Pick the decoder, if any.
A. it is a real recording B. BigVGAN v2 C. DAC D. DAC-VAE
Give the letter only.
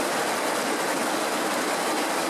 A